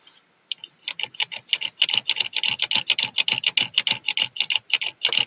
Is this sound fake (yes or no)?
no